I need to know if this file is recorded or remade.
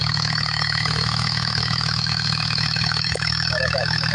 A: remade